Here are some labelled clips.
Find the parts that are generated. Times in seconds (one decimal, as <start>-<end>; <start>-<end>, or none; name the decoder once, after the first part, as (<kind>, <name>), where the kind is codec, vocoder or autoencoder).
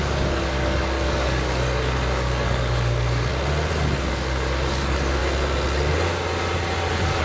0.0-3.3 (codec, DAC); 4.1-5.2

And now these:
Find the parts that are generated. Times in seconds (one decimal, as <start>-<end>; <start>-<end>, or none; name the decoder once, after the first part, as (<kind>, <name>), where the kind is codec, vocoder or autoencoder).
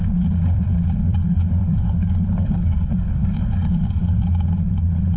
1.1-4.2 (codec, DAC)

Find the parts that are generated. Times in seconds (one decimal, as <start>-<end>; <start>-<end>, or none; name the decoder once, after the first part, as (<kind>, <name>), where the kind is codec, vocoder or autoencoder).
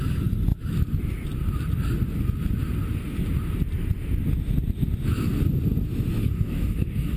6.2-7.2 (codec, DAC)